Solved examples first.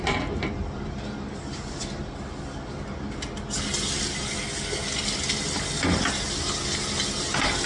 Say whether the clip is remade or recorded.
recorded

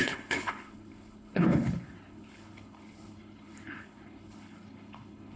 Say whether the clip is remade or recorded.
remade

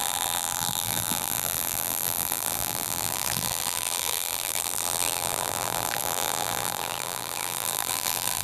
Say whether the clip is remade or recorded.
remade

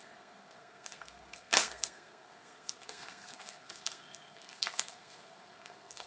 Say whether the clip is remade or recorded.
remade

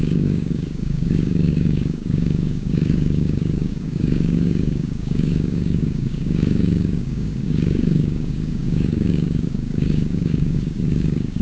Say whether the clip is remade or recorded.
remade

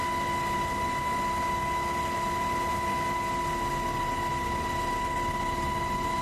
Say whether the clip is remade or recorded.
recorded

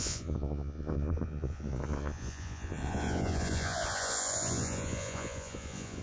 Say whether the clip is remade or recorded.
remade